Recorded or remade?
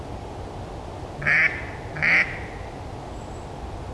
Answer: recorded